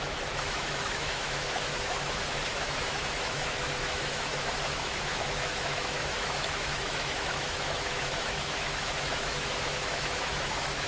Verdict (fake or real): fake